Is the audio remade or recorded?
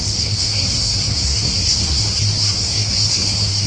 remade